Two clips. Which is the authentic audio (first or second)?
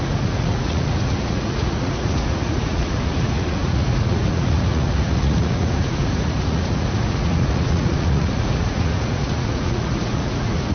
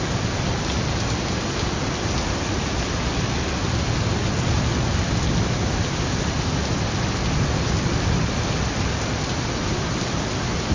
second